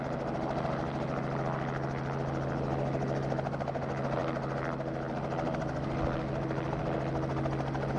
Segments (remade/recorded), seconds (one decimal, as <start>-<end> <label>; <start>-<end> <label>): 0.0-8.0 recorded